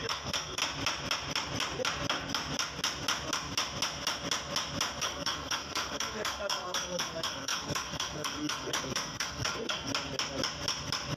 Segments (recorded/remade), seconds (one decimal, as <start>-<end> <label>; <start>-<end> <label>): 0.0-0.6 remade; 0.6-5.0 recorded; 5.0-9.9 remade; 9.9-11.2 recorded